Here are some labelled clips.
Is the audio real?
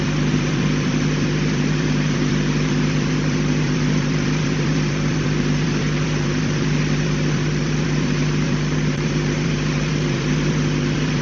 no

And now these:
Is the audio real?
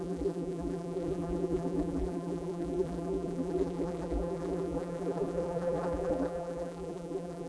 no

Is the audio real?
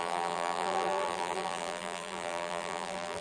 no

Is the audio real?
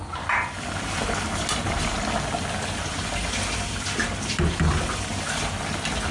yes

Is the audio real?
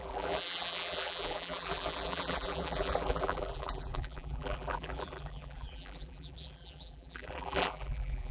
no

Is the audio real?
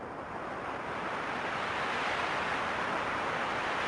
yes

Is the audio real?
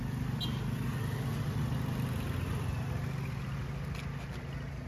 yes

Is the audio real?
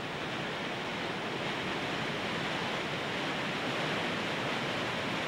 yes